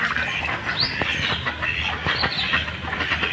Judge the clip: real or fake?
real